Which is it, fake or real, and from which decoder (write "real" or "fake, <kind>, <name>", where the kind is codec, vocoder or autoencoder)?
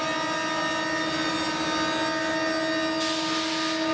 real